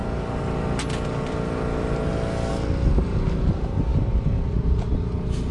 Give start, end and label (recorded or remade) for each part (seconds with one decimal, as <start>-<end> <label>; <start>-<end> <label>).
0.0-5.5 recorded